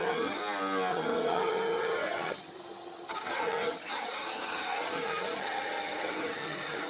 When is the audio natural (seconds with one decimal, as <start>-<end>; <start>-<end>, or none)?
0.4-0.9